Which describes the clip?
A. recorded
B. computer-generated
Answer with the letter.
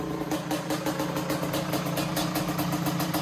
A